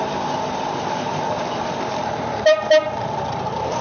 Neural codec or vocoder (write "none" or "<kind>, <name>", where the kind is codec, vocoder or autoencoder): vocoder, BigVGAN v2